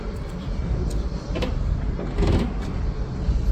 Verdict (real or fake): real